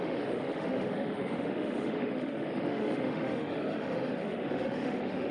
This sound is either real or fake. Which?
fake